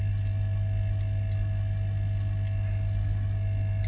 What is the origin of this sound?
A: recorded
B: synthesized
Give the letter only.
A